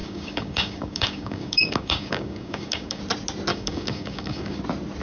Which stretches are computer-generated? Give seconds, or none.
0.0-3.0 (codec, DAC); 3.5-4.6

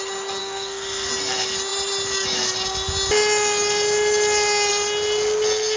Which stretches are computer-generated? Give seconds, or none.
0.4-1.1 (codec, SNAC)

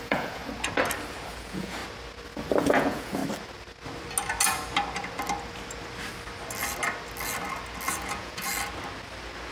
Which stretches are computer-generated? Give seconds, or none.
0.0-0.4 (vocoder, Vocos); 1.3-1.8; 2.6-3.2; 7.9-8.5

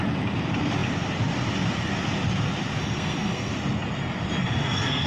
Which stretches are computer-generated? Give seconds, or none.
2.8-3.5 (codec, SNAC); 4.4-5.1

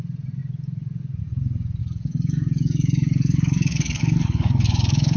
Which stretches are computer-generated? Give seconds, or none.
1.8-5.2 (codec, DAC)

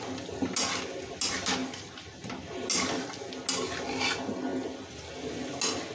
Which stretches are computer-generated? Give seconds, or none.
none

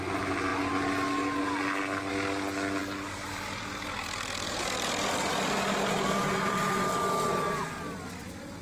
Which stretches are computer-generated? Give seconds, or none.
none

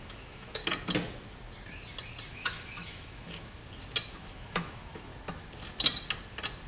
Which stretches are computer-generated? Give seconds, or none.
0.0-0.6 (autoencoder, DAC-VAE); 2.3-3.6; 4.1-5.1